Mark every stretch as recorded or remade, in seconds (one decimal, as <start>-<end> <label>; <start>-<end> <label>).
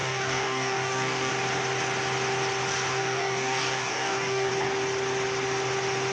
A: 0.0-1.3 remade; 1.3-2.9 recorded; 2.9-4.5 remade; 4.5-6.1 recorded